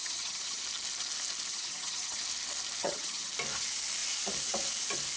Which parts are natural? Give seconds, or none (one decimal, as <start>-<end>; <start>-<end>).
0.6-1.5; 2.2-2.8; 3.3-5.2